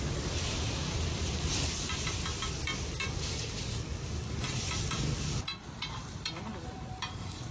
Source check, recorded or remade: remade